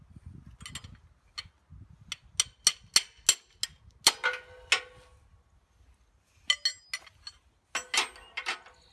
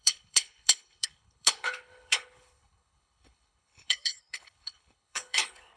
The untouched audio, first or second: first